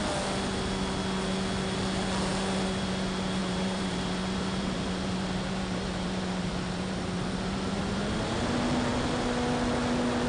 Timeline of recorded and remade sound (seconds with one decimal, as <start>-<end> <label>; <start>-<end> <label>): 0.0-3.4 recorded; 3.4-8.0 remade; 8.0-10.3 recorded